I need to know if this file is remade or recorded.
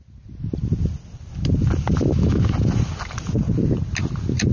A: recorded